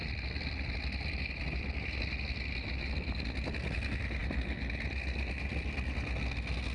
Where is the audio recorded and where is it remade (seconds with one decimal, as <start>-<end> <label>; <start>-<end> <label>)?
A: 0.0-6.7 recorded